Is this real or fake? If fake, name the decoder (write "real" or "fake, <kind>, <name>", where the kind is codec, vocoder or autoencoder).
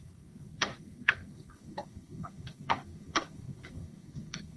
fake, codec, SNAC